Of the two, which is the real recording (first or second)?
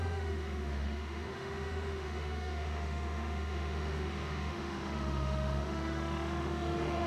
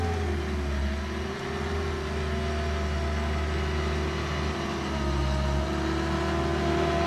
second